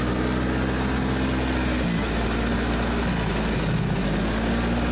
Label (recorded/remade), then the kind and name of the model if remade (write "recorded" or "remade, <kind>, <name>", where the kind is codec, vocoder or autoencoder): recorded